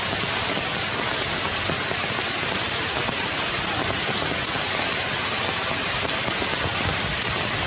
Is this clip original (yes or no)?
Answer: yes